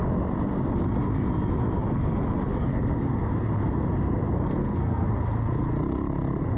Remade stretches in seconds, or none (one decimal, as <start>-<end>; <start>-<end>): 4.6-5.1